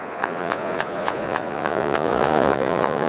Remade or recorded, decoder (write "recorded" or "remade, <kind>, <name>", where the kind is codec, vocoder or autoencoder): remade, vocoder, Vocos